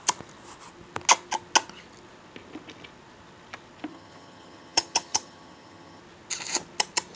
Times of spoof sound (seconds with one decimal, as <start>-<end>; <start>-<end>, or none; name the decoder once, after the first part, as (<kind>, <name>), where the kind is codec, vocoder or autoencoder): 3.9-6.0 (vocoder, HiFi-GAN)